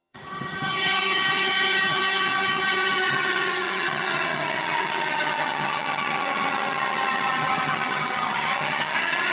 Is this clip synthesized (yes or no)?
yes